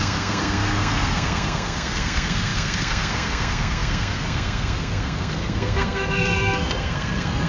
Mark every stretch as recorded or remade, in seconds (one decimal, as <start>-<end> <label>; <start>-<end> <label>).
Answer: 0.0-7.5 remade